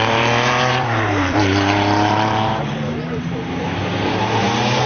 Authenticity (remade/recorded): remade